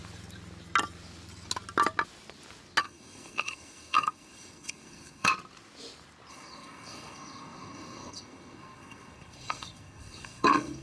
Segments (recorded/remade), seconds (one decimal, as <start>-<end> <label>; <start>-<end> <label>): 0.0-2.8 recorded; 2.8-5.3 remade; 5.3-6.3 recorded; 6.3-10.8 remade